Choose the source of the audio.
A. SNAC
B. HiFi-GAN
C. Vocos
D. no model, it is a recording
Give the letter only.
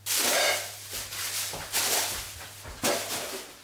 D